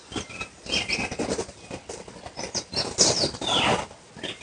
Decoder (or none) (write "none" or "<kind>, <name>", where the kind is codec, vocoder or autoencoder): none